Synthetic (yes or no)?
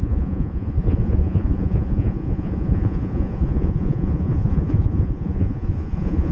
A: yes